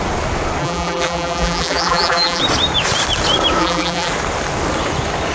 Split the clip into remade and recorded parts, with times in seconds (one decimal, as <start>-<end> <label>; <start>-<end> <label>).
0.0-0.6 recorded; 0.6-2.4 remade; 2.4-3.6 recorded; 3.6-4.1 remade; 4.1-5.3 recorded